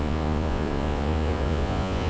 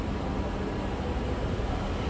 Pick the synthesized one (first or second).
first